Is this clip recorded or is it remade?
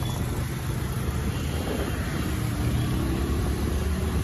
recorded